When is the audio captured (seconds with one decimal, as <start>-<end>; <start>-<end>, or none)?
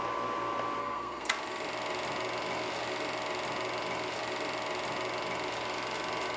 0.0-0.8; 1.3-6.4